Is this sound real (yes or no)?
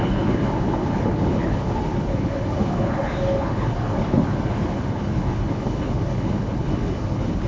no